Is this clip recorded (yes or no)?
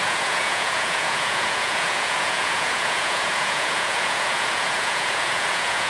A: no